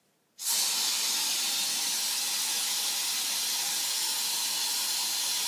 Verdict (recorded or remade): recorded